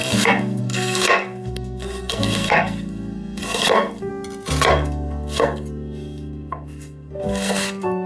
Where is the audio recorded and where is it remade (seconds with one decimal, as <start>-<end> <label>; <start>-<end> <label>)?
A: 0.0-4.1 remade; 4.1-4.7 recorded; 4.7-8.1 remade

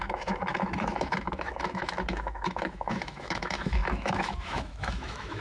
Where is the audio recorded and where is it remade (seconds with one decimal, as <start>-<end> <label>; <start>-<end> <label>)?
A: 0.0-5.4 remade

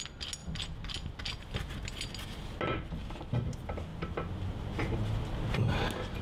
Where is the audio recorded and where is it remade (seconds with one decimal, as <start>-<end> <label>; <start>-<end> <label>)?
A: 0.0-6.2 recorded

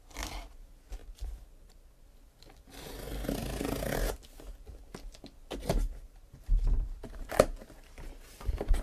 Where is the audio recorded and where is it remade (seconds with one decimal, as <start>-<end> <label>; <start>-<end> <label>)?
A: 0.0-1.0 recorded; 1.0-2.1 remade; 2.1-3.4 recorded; 3.4-4.2 remade; 4.2-5.7 recorded; 5.7-7.3 remade; 7.3-8.8 recorded

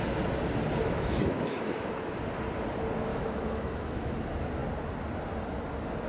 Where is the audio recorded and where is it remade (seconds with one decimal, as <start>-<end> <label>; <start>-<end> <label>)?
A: 0.0-0.8 recorded; 0.8-1.9 remade; 1.9-3.1 recorded; 3.1-4.1 remade; 4.1-6.1 recorded